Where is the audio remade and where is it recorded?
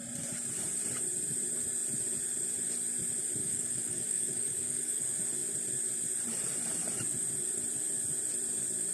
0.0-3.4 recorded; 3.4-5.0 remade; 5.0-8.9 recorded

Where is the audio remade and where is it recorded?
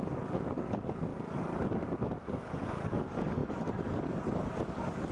0.0-5.1 remade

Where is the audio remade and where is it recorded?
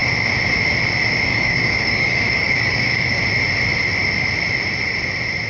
0.0-1.3 recorded; 1.3-3.2 remade; 3.2-5.5 recorded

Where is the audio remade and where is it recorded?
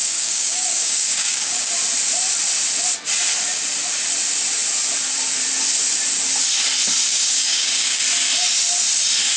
0.0-1.7 remade; 1.7-7.1 recorded; 7.1-8.0 remade; 8.0-9.4 recorded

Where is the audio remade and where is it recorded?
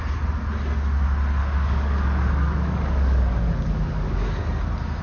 0.0-1.4 recorded; 1.4-4.4 remade; 4.4-5.0 recorded